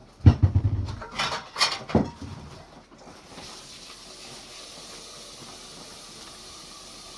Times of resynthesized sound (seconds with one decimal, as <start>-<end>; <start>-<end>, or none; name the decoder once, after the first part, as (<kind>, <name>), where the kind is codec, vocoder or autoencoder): 0.0-1.8 (vocoder, BigVGAN v2)